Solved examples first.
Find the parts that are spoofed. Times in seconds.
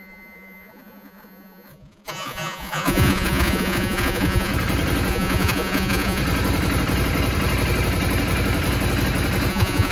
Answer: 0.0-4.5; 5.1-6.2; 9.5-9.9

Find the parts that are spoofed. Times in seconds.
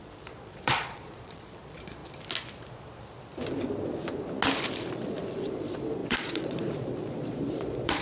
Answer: 0.0-2.0; 4.9-8.0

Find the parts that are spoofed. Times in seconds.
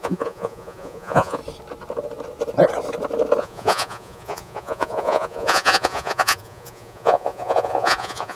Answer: 0.0-1.4; 3.4-8.4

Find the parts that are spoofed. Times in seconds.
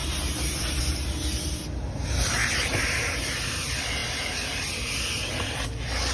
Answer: none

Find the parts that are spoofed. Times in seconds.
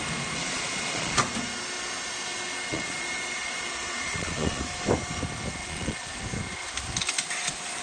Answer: 0.4-1.2; 2.7-4.6; 5.6-6.2